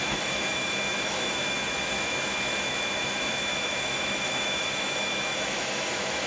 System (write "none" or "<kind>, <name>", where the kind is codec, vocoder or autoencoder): autoencoder, DAC-VAE